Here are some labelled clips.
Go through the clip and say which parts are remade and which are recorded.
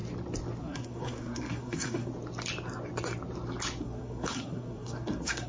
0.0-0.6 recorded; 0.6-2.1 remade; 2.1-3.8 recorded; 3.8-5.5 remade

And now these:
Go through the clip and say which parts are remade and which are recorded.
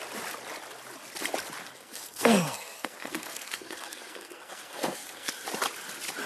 0.0-1.6 recorded; 1.6-5.3 remade; 5.3-6.3 recorded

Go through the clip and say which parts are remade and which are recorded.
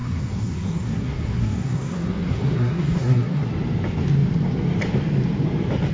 0.0-3.5 remade; 3.5-5.9 recorded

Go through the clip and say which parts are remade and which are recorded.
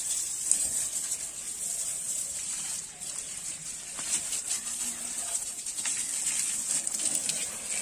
0.0-0.8 remade; 0.8-1.8 recorded; 1.8-6.0 remade; 6.0-7.8 recorded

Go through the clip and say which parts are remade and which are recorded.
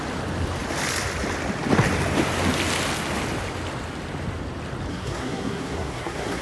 0.0-4.9 recorded; 4.9-6.4 remade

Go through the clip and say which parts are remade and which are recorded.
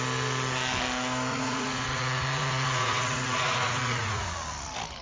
0.0-1.3 recorded; 1.3-4.3 remade; 4.3-5.0 recorded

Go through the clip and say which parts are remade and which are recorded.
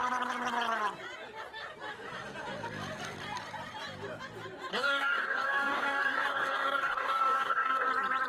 0.0-4.7 recorded; 4.7-7.9 remade; 7.9-8.3 recorded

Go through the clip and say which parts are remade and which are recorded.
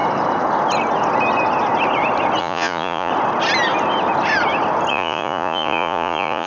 0.0-2.4 recorded; 2.4-3.1 remade; 3.1-4.9 recorded; 4.9-6.5 remade